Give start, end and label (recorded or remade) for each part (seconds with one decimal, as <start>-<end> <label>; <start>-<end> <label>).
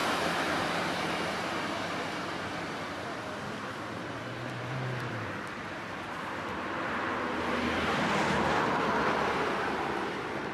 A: 0.0-10.5 remade